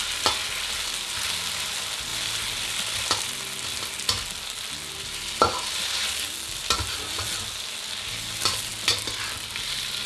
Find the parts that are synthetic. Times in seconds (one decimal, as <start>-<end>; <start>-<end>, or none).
none